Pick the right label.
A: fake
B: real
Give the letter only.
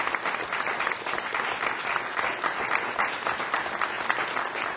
B